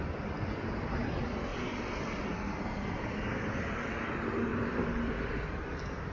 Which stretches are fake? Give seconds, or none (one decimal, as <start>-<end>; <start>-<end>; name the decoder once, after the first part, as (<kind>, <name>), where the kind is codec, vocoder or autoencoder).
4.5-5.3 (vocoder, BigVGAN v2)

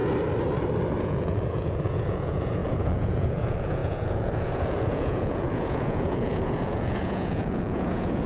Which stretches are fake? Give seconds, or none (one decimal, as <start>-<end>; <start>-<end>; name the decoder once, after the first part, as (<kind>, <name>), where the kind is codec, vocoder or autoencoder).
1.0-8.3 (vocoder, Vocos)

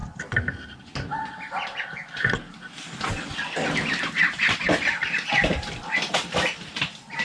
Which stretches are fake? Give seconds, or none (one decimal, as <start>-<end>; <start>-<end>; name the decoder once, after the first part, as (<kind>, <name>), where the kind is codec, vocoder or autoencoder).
4.3-6.3 (vocoder, BigVGAN v2)

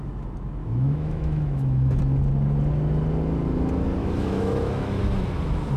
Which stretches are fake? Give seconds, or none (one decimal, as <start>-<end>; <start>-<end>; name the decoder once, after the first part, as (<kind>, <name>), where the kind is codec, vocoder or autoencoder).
0.6-2.0 (autoencoder, DAC-VAE); 4.0-5.0

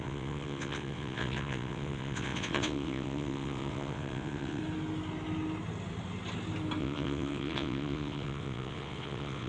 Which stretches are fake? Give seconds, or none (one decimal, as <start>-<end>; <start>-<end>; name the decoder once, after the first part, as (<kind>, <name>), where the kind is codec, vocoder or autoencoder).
0.0-4.6 (vocoder, WaveNeXt); 6.8-9.5

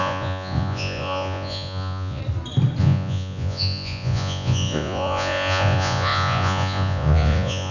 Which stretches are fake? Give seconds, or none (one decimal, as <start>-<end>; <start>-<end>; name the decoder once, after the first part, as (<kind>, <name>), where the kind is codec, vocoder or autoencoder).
0.0-2.2 (vocoder, Vocos); 2.8-7.7